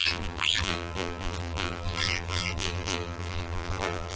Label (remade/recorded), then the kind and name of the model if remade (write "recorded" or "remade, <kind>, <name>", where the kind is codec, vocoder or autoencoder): remade, vocoder, BigVGAN v2